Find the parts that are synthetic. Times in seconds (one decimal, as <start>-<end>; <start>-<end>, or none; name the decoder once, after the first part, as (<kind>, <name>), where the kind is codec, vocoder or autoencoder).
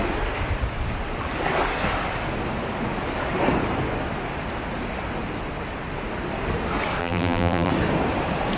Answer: 7.0-7.7 (vocoder, BigVGAN v2)